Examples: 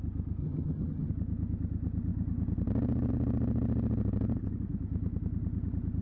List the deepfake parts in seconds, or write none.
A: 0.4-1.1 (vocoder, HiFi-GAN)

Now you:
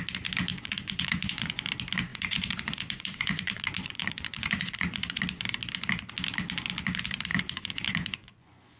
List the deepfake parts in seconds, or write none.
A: 0.5-1.7 (vocoder, Vocos); 2.1-5.2; 7.3-8.8

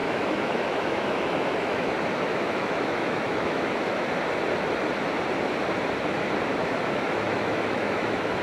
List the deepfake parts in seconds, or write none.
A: 0.0-1.9 (autoencoder, DAC-VAE); 2.3-4.1; 6.5-8.4

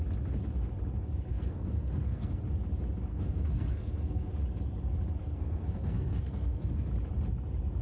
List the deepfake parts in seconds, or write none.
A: 1.3-2.4 (codec, SNAC); 3.1-4.3; 5.2-6.9

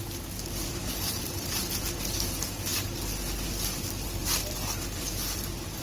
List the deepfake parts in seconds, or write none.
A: none

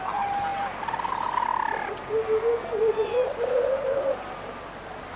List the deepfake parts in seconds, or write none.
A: none

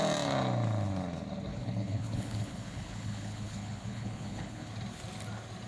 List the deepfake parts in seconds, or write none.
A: 1.5-4.7 (codec, HILCodec)